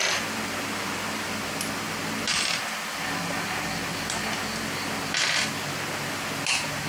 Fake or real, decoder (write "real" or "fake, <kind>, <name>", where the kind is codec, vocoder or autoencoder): real